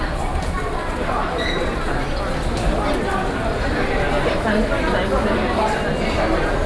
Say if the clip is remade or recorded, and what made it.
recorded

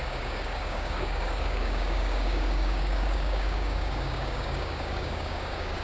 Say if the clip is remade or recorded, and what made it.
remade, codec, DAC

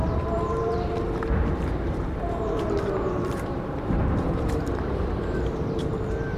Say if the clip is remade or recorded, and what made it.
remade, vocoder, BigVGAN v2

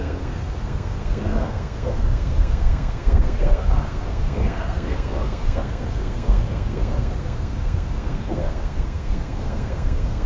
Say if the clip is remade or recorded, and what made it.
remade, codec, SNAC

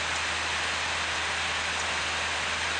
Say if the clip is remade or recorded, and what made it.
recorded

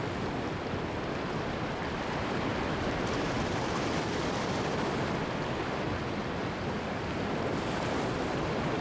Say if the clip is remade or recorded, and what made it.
recorded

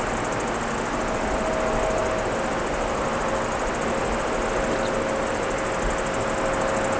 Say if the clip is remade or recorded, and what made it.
recorded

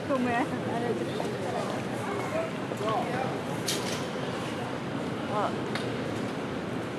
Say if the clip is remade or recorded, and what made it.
recorded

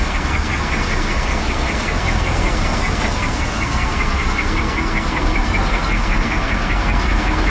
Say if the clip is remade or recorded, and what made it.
remade, codec, SNAC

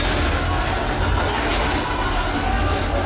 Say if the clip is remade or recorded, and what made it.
recorded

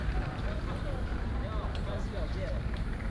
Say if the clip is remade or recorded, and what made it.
remade, vocoder, BigVGAN v2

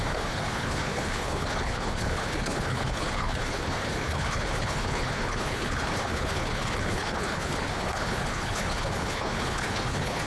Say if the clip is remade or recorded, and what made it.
remade, codec, HILCodec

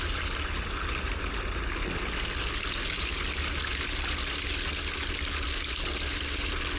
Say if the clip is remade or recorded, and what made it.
recorded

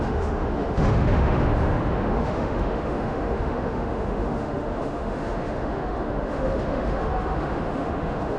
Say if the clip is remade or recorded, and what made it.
remade, autoencoder, DAC-VAE